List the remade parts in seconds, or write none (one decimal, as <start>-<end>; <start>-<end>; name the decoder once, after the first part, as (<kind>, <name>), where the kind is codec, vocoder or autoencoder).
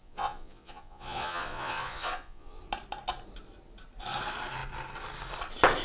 0.0-2.6 (vocoder, Vocos)